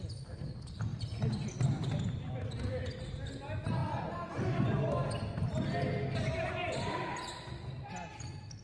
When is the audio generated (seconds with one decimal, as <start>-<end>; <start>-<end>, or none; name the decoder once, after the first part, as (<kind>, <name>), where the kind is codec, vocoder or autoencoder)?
none